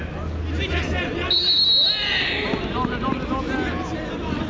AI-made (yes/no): no